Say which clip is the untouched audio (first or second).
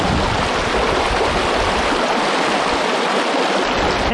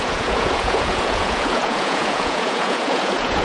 first